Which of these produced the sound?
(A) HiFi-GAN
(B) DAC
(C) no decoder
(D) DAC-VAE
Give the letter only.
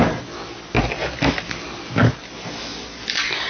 C